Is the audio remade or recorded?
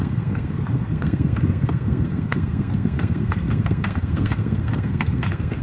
remade